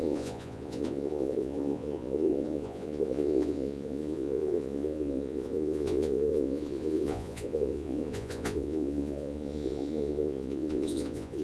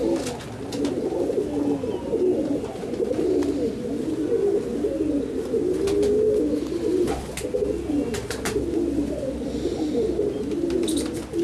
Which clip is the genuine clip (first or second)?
second